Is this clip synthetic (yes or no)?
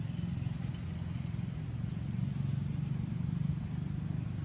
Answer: no